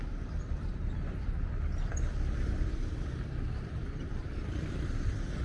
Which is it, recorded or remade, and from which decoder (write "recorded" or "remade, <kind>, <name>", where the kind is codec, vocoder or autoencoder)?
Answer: remade, vocoder, BigVGAN v2